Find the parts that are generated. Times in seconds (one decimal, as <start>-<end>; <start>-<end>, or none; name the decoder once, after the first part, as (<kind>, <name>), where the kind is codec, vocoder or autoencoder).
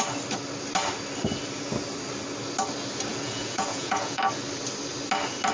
3.1-4.2 (vocoder, Vocos)